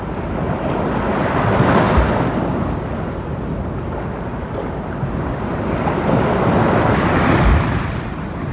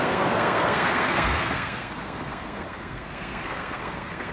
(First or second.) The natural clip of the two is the first